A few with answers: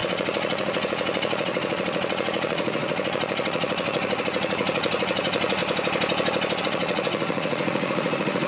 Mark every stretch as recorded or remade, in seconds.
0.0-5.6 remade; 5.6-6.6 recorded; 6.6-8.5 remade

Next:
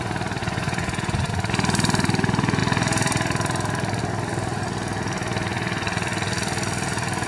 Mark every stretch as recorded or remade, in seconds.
0.0-0.4 recorded; 0.4-1.3 remade; 1.3-7.3 recorded

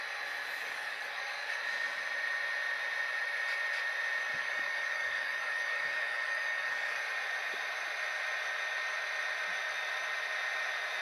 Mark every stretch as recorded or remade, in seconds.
0.0-0.6 recorded; 0.6-1.5 remade; 1.5-4.4 recorded; 4.4-7.0 remade; 7.0-11.0 recorded

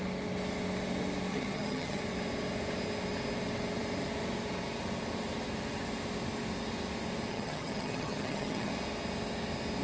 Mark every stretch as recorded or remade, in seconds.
0.0-1.3 recorded; 1.3-2.0 remade; 2.0-7.3 recorded; 7.3-8.7 remade; 8.7-9.8 recorded

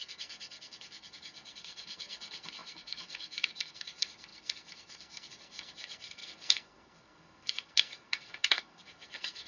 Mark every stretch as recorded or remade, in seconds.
0.0-9.5 remade

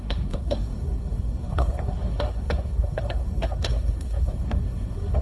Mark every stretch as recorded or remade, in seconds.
0.0-5.2 remade

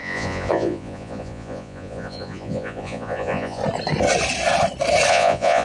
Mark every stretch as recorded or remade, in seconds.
0.0-3.6 remade; 3.6-5.1 recorded; 5.1-5.6 remade

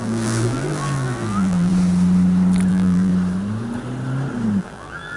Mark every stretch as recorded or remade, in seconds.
0.0-1.7 remade; 1.7-2.7 recorded; 2.7-3.1 remade; 3.1-4.6 recorded; 4.6-5.2 remade